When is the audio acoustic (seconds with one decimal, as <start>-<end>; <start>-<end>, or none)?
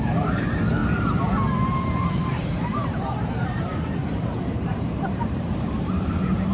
0.8-1.9